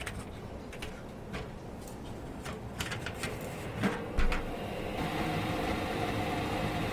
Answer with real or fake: real